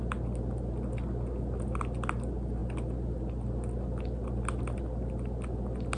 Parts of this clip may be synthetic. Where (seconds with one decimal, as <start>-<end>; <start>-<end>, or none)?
none